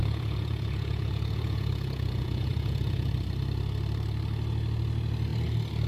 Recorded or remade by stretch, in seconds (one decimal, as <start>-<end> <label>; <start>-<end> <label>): 0.0-3.1 remade; 3.1-5.9 recorded